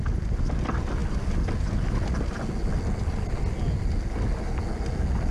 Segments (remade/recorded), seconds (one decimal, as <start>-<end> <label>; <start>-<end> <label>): 0.0-5.3 recorded